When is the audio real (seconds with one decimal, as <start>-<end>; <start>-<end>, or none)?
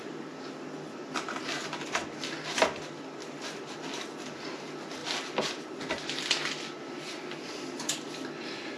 0.0-8.8